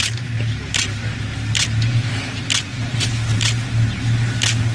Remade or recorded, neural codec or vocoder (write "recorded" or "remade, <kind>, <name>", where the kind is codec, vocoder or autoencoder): recorded